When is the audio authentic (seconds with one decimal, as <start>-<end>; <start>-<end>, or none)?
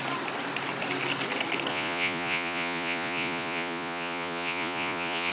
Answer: 0.0-1.7